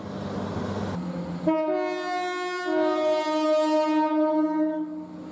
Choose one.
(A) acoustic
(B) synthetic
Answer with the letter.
A